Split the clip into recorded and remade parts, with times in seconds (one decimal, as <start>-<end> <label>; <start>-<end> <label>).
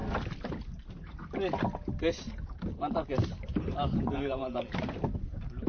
0.0-2.4 recorded; 2.4-4.4 remade; 4.4-5.7 recorded